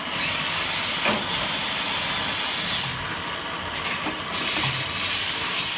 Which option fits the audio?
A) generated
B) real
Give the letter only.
B